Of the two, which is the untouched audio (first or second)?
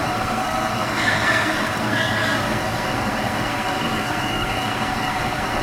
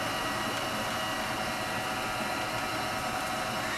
second